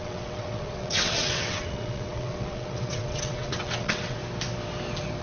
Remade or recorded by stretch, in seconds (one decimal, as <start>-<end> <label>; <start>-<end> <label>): 0.0-4.2 remade; 4.2-5.2 recorded